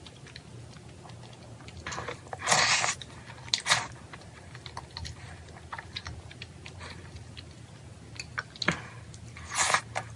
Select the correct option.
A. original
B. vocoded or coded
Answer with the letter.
A